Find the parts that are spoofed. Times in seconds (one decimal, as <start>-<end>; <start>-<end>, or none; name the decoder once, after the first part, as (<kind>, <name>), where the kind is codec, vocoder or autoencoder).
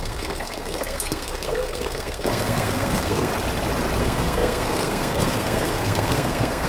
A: 0.0-3.3 (codec, SNAC); 4.0-6.7